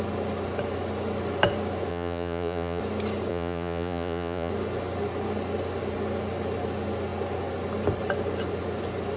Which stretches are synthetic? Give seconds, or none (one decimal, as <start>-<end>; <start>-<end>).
1.9-2.8; 3.3-4.5